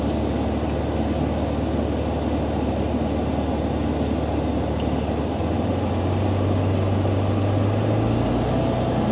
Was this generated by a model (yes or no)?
no